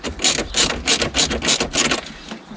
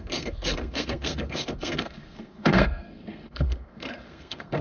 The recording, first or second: first